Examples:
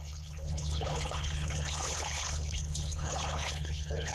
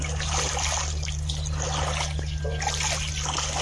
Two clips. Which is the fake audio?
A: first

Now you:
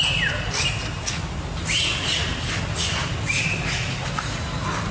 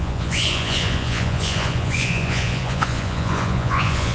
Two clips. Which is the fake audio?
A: second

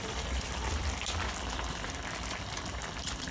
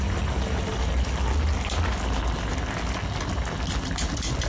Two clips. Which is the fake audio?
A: first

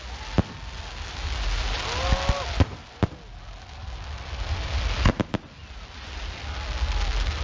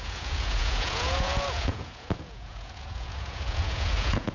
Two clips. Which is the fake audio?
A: second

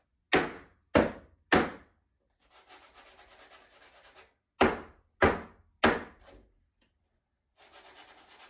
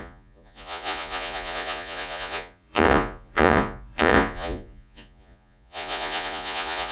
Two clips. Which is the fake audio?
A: second